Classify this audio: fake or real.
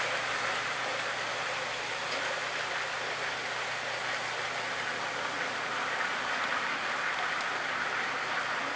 real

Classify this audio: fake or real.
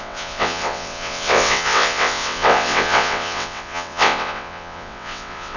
fake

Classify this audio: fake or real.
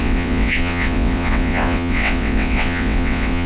fake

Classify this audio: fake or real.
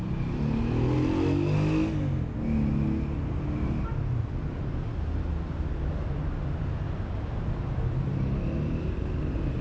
real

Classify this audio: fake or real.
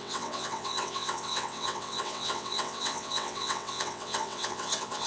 fake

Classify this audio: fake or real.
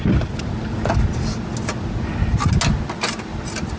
real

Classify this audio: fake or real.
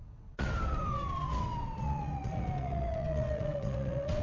fake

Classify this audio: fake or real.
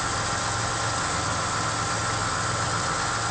real